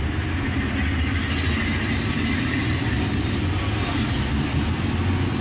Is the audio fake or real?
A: real